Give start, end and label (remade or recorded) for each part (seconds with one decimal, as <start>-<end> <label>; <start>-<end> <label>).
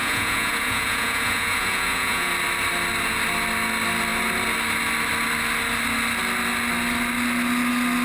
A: 0.0-2.3 remade; 2.3-8.0 recorded